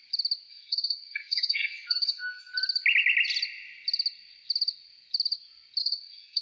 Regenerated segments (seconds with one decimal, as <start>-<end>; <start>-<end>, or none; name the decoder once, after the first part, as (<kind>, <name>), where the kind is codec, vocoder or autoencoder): 0.5-2.5 (codec, SNAC); 5.8-6.4